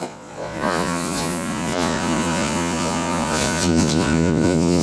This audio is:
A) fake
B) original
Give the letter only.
A